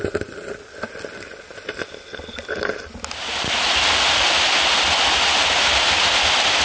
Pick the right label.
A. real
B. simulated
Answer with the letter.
A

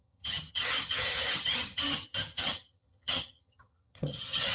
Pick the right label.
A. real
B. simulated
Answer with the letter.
B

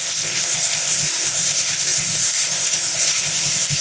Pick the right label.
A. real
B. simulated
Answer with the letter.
B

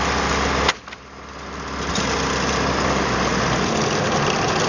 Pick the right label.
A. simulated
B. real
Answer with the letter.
B